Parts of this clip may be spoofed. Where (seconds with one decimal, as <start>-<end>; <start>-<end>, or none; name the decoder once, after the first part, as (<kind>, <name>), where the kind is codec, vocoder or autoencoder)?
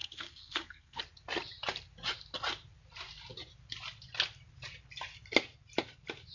0.0-1.0 (codec, SNAC)